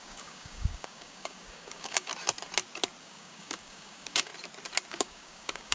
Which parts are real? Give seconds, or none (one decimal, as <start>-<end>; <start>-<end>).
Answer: 2.1-3.0; 4.3-4.9